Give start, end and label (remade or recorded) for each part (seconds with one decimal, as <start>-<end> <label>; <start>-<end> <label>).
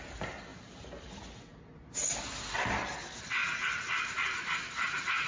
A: 0.0-5.3 recorded